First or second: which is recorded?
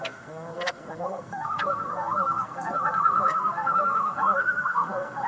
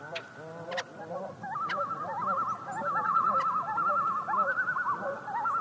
second